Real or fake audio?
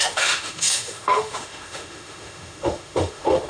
fake